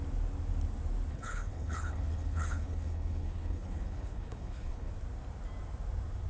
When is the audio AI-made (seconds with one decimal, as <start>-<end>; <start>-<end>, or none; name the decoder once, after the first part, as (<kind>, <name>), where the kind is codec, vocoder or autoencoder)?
1.1-4.9 (codec, HILCodec)